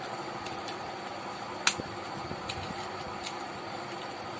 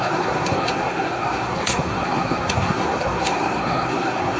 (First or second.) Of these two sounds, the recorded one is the first